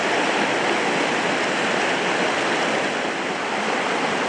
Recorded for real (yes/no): yes